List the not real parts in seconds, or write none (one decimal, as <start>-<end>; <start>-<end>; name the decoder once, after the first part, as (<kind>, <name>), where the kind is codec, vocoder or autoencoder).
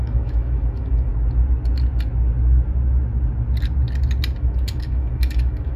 0.0-1.1 (autoencoder, DAC-VAE); 4.4-5.8